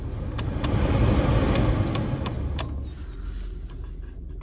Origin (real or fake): real